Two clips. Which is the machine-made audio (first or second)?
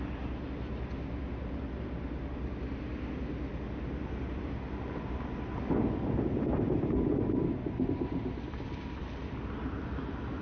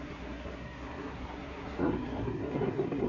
second